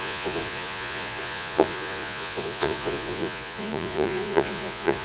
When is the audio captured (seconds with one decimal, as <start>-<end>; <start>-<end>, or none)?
none

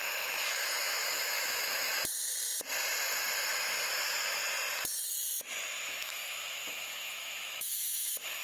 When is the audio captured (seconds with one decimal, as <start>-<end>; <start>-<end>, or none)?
1.9-3.5; 4.4-5.6

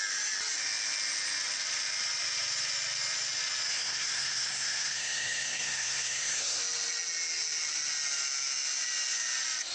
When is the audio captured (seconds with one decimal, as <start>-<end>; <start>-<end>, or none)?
0.0-3.7; 6.6-9.7

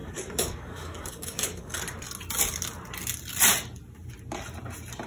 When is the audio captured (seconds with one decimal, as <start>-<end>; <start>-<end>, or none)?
1.8-5.1

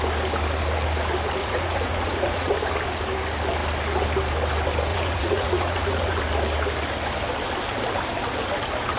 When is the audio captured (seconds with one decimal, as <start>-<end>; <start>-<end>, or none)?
0.0-1.4; 2.5-4.9; 6.2-9.0